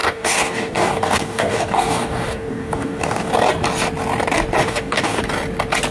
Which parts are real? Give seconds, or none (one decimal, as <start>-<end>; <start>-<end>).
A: 3.3-4.6; 5.2-5.9